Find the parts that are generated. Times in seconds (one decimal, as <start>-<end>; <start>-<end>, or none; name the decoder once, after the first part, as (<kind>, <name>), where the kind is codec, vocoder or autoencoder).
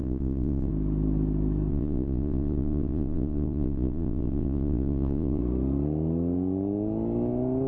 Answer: 0.0-0.7 (vocoder, Vocos); 1.7-5.4